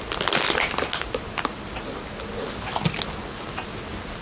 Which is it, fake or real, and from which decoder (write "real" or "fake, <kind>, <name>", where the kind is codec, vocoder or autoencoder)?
real